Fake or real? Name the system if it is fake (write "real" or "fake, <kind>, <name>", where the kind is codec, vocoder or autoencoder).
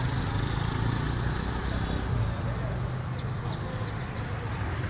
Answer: real